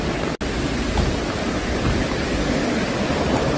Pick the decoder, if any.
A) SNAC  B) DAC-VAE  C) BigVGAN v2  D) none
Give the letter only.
D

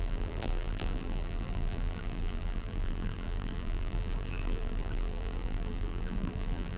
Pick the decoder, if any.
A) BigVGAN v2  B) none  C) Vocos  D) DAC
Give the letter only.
A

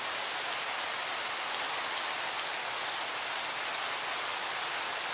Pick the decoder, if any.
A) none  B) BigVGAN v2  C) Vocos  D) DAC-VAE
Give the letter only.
A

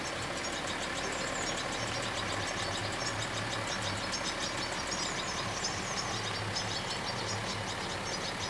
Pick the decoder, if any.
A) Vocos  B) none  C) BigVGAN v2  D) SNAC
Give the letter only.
B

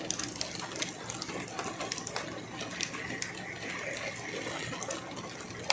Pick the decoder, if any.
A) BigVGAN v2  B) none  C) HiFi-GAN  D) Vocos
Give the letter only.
B